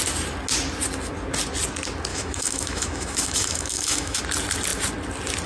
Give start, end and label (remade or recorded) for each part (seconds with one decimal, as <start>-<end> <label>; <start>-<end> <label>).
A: 0.0-2.1 recorded; 2.1-4.2 remade; 4.2-5.5 recorded